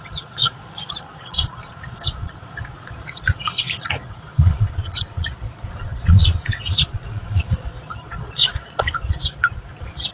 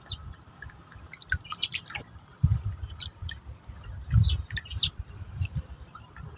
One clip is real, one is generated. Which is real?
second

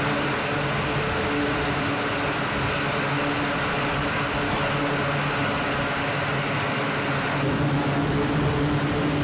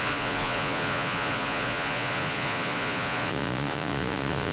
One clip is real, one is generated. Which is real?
first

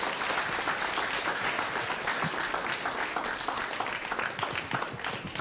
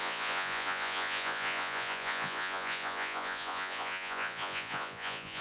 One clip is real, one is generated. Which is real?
first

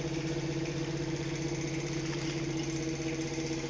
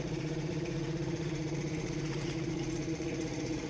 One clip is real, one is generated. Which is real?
first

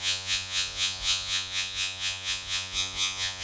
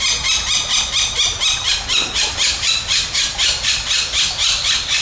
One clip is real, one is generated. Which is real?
second